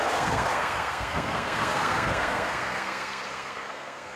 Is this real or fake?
fake